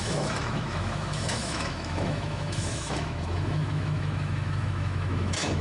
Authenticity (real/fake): fake